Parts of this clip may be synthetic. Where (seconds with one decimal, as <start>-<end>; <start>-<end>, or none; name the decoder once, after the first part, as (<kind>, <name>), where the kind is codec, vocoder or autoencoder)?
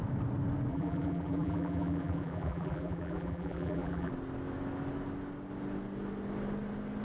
0.7-4.1 (vocoder, BigVGAN v2)